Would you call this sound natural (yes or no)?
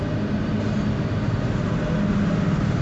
yes